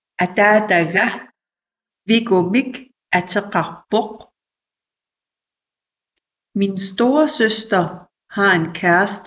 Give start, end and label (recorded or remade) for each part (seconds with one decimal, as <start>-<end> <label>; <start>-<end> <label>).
0.0-0.9 recorded; 0.9-1.9 remade; 1.9-9.3 recorded